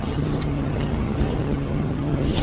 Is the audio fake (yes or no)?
yes